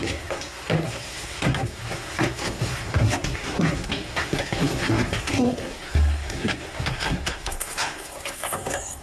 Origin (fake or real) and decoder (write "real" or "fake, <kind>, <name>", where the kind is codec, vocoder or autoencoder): fake, codec, SNAC